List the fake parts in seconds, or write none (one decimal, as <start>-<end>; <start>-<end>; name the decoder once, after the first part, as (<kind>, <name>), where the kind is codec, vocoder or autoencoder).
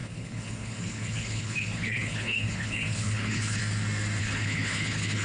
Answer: 0.0-3.6 (codec, HILCodec); 4.2-5.2